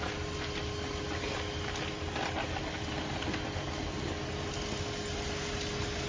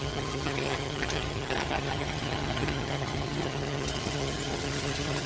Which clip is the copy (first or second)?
second